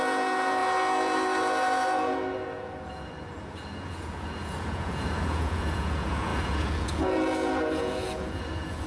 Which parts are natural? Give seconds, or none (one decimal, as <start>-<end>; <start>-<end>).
none